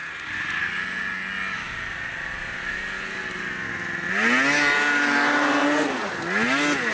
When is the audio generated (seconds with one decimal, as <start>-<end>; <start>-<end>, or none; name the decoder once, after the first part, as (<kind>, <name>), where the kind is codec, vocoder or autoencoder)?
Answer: none